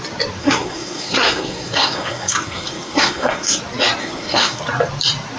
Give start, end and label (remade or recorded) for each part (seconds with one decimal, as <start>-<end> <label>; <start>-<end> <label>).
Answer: 0.0-0.4 recorded; 0.4-3.6 remade; 3.6-4.0 recorded; 4.0-4.6 remade; 4.6-5.4 recorded

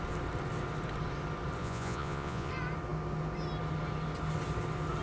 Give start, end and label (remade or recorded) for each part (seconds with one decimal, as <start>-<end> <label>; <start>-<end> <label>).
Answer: 0.0-1.6 recorded; 1.6-2.5 remade; 2.5-5.0 recorded

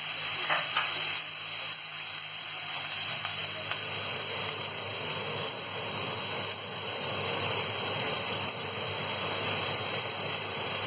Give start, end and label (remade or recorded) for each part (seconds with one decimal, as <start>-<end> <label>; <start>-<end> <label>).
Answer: 0.0-10.9 recorded

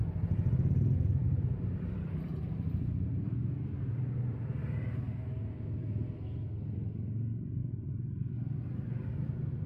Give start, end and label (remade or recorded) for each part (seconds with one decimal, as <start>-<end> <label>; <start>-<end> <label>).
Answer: 0.0-1.2 recorded; 1.2-4.0 remade; 4.0-9.7 recorded

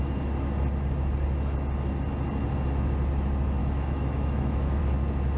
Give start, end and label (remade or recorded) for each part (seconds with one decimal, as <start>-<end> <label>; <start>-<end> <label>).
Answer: 0.0-3.6 recorded; 3.6-4.8 remade; 4.8-5.4 recorded

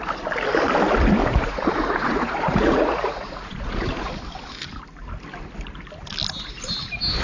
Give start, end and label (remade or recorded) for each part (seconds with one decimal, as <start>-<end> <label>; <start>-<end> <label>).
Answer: 0.0-1.2 recorded; 1.2-4.1 remade; 4.1-7.2 recorded

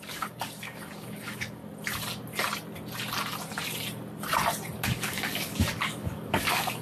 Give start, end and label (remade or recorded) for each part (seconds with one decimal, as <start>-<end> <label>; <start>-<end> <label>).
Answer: 0.0-1.6 remade; 1.6-4.8 recorded; 4.8-6.8 remade